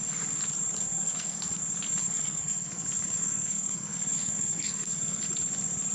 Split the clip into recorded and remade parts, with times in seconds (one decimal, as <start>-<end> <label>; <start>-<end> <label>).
0.0-0.8 recorded; 0.8-1.6 remade; 1.6-2.0 recorded; 2.0-5.2 remade; 5.2-5.9 recorded

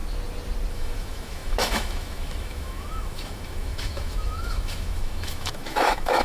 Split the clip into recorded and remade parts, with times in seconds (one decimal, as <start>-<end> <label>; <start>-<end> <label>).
0.0-0.7 recorded; 0.7-6.2 remade